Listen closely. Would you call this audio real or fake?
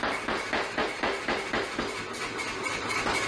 real